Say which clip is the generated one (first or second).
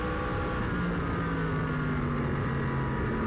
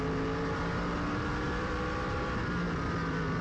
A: second